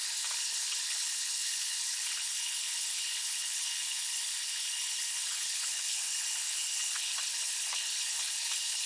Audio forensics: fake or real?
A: fake